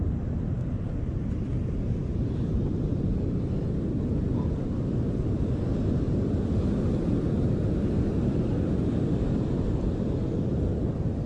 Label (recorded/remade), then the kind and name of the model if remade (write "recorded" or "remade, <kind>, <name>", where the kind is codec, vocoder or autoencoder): recorded